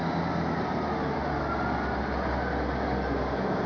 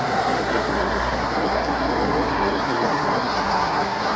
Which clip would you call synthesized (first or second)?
second